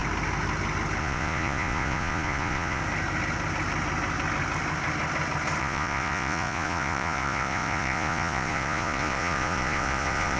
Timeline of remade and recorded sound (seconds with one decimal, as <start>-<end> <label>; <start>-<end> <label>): 0.0-1.0 recorded; 1.0-2.8 remade; 2.8-5.6 recorded; 5.6-10.4 remade